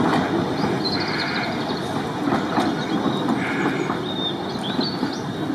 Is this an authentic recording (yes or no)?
yes